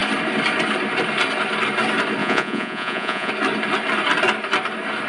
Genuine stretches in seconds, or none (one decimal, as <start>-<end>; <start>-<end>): 0.0-2.2; 3.3-5.1